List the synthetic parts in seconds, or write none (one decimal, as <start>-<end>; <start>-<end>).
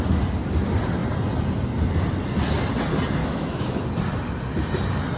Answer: 3.2-3.8